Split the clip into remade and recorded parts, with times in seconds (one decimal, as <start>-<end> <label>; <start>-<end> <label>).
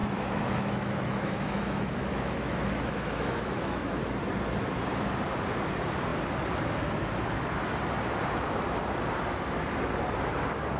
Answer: 0.0-4.0 remade; 4.0-10.8 recorded